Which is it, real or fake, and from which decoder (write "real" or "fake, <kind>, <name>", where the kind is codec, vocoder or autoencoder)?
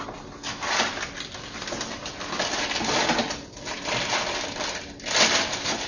real